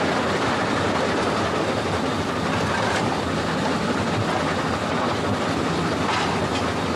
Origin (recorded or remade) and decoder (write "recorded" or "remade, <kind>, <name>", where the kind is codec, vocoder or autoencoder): recorded